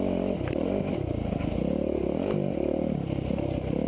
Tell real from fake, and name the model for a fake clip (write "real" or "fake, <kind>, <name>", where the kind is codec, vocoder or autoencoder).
real